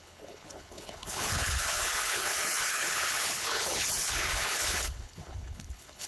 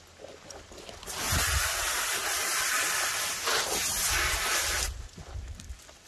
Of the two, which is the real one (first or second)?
second